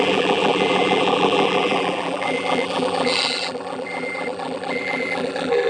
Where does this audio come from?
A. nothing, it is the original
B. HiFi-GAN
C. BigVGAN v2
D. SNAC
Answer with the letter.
C